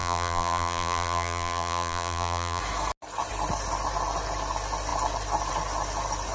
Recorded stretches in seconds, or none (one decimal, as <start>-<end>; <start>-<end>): 2.6-6.3